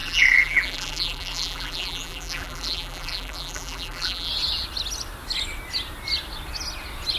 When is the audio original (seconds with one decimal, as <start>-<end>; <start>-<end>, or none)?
4.3-7.2

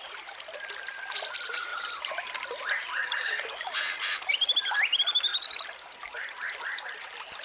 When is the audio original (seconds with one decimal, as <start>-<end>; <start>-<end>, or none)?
0.0-1.7; 4.3-7.4

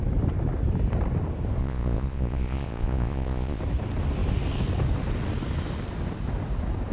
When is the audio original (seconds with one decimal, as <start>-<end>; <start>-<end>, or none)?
0.0-1.6; 3.6-6.9

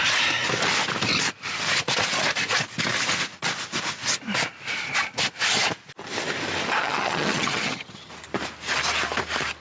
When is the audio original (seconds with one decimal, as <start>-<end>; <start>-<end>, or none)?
0.0-6.8; 8.1-9.6

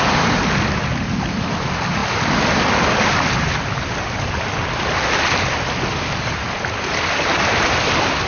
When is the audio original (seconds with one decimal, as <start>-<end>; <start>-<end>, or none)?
0.0-8.3

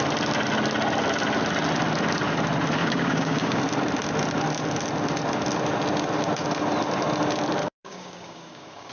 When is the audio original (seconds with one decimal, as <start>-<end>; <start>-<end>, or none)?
0.0-2.8; 3.6-7.6